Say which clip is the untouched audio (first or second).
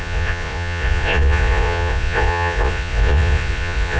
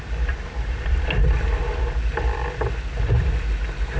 second